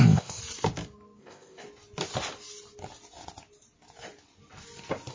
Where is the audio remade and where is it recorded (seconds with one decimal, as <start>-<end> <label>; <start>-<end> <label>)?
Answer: 0.0-0.4 remade; 0.4-1.2 recorded; 1.2-1.6 remade; 1.6-5.1 recorded